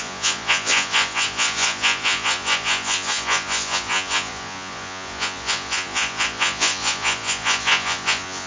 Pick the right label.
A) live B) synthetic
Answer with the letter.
B